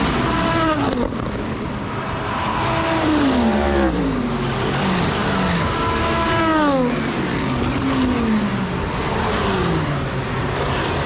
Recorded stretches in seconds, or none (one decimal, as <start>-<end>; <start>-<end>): 0.0-11.1